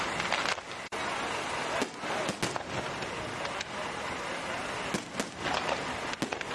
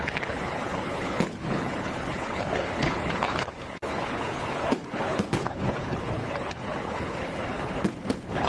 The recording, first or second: first